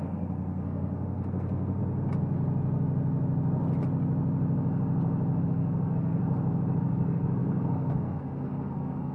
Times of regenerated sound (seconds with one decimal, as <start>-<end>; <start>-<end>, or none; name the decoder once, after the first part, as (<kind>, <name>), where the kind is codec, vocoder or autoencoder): 0.0-1.8 (codec, SNAC); 5.4-6.2; 6.8-9.1